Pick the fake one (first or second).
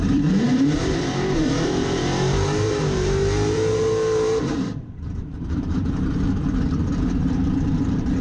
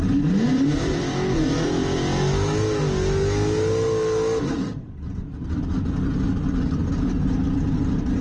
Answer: first